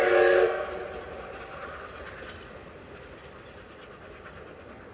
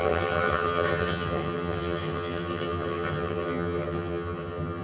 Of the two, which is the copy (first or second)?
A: second